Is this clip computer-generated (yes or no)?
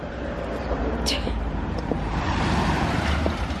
yes